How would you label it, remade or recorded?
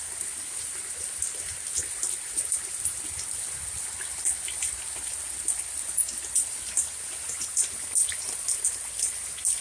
recorded